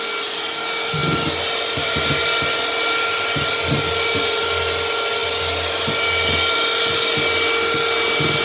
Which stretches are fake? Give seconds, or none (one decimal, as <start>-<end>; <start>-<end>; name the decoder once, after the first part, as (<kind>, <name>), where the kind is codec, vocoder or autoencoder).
none